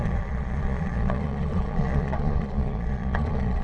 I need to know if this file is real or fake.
fake